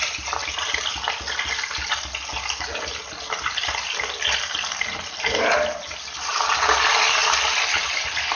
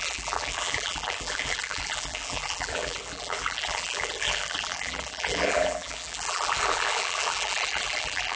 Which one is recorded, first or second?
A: first